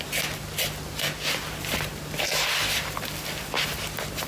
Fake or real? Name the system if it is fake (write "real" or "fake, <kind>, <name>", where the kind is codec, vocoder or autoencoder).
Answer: real